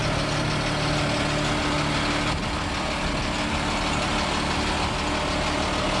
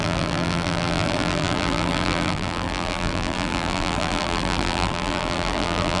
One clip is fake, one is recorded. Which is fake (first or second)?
second